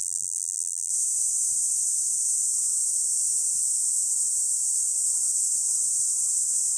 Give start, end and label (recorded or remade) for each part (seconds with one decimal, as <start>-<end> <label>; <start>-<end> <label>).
0.0-0.9 remade; 0.9-6.8 recorded